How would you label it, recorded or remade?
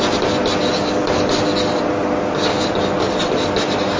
recorded